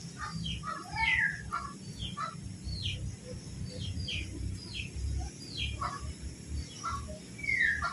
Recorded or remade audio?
recorded